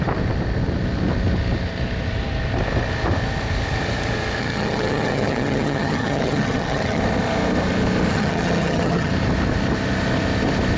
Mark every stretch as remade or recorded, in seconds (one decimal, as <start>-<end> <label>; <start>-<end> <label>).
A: 0.0-4.4 recorded; 4.4-7.0 remade; 7.0-8.1 recorded; 8.1-9.1 remade; 9.1-10.8 recorded